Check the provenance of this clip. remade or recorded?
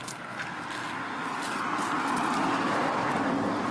recorded